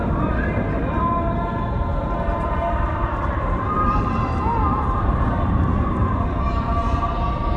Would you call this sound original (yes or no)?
no